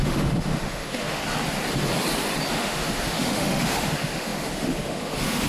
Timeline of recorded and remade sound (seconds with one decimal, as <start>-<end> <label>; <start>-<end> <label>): 0.0-1.2 remade; 1.2-2.5 recorded; 2.5-5.5 remade